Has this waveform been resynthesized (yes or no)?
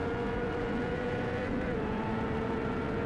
yes